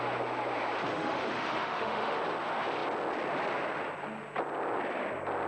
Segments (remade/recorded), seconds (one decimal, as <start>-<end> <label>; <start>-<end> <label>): 0.0-0.9 recorded; 0.9-2.2 remade; 2.2-5.5 recorded